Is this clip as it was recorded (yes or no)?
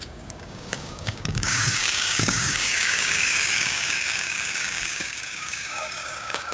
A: no